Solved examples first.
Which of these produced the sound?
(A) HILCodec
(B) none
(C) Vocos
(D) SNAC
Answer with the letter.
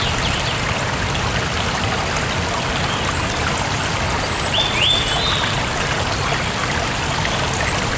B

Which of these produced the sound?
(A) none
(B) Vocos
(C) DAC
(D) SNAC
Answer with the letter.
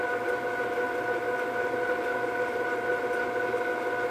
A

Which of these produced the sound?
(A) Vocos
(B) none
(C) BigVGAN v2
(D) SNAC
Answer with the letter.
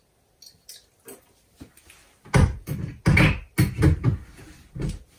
B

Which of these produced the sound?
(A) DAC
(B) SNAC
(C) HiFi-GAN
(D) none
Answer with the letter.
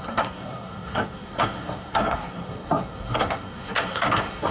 B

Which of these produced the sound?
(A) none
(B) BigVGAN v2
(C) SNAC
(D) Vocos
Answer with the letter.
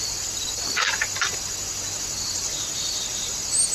A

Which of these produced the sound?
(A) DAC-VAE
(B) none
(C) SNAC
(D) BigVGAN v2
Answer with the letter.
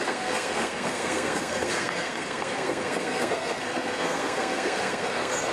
C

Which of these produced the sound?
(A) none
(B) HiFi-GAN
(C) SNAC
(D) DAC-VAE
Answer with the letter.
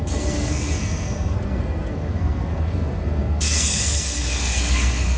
C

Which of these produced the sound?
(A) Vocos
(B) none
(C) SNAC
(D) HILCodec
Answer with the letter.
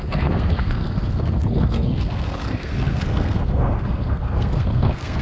C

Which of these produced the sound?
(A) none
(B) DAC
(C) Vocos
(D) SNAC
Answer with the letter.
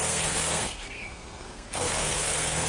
D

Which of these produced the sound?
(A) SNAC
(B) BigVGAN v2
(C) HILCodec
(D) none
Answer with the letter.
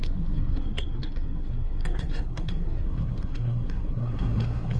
A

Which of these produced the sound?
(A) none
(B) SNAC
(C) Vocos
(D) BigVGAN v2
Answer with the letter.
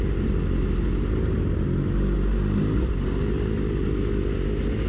A